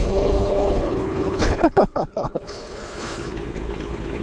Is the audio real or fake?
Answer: fake